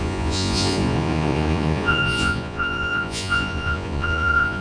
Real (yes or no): no